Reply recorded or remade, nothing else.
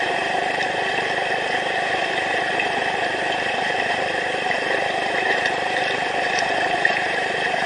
recorded